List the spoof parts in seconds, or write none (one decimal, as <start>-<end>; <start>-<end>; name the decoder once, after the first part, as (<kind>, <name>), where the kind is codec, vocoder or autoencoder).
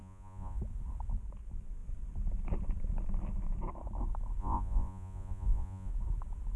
0.0-0.6 (vocoder, Vocos); 4.4-5.9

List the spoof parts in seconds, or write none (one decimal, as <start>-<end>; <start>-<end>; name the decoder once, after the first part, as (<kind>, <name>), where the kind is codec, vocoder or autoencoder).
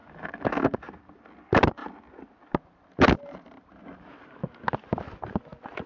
none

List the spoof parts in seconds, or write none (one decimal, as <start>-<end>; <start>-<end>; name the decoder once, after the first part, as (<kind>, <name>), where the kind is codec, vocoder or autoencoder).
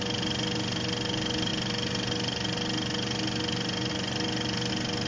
none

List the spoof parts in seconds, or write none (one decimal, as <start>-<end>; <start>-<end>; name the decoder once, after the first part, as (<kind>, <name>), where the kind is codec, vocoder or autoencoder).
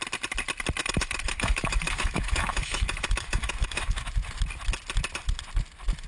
0.8-4.1 (autoencoder, DAC-VAE)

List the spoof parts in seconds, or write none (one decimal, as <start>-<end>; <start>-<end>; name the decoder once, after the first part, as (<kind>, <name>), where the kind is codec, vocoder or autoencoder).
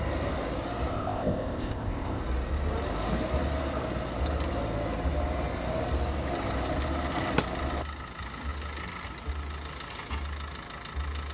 0.9-2.2 (codec, ZipCodec)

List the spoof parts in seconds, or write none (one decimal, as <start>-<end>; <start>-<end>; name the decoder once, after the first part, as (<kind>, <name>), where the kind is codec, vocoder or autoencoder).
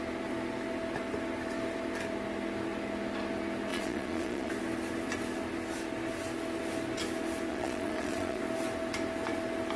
3.7-4.5 (vocoder, Vocos); 7.5-8.4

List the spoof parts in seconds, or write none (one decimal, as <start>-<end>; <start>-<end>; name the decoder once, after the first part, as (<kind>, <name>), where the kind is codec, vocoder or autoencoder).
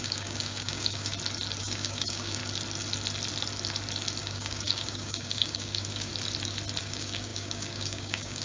0.0-1.1 (codec, DAC); 1.6-2.4; 4.2-6.1; 6.8-8.4